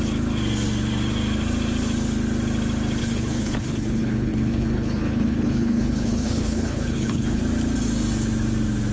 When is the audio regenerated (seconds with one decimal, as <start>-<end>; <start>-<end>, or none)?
3.0-7.4